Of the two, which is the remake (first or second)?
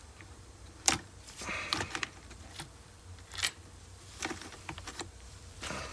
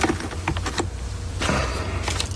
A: first